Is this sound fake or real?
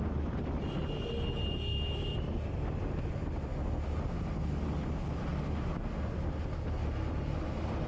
real